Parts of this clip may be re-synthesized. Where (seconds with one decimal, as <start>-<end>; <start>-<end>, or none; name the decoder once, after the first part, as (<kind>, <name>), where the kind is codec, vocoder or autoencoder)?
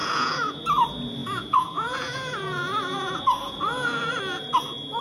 0.0-0.6 (vocoder, Vocos); 1.2-4.2